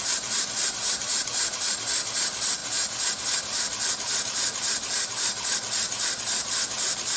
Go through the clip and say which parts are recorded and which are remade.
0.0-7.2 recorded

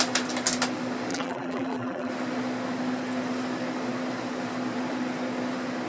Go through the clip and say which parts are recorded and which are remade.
0.0-1.1 recorded; 1.1-2.1 remade; 2.1-5.9 recorded

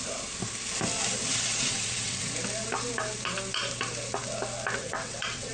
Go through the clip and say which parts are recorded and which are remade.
0.0-1.2 recorded; 1.2-2.3 remade; 2.3-4.8 recorded; 4.8-5.5 remade

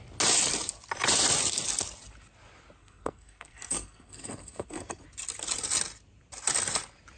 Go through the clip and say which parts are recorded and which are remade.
0.0-2.8 recorded; 2.8-5.0 remade; 5.0-7.2 recorded